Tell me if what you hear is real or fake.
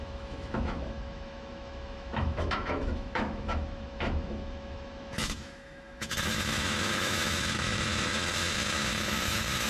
fake